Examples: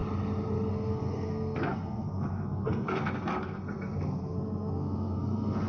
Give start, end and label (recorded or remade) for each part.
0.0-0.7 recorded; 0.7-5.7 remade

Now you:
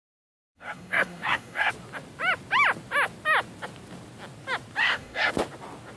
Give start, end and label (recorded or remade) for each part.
0.0-1.7 remade; 1.7-4.8 recorded; 4.8-5.3 remade; 5.3-6.0 recorded

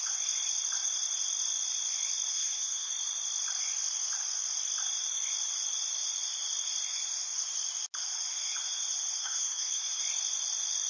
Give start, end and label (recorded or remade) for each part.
0.0-2.3 recorded; 2.3-2.9 remade; 2.9-9.2 recorded; 9.2-10.0 remade; 10.0-10.9 recorded